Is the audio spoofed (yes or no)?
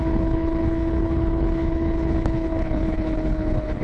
yes